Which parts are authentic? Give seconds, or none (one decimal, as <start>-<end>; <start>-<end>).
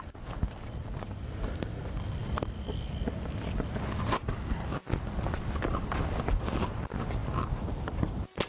0.0-8.5